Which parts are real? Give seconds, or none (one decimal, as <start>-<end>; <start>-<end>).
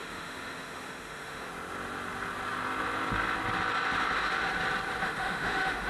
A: 1.5-5.0